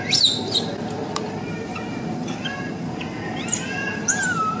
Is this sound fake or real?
real